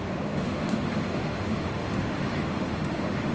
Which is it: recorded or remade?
remade